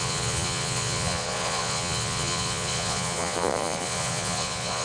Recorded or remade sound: remade